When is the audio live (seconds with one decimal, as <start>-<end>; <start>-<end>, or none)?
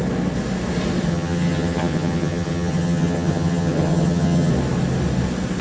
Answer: 0.0-1.1; 4.5-5.6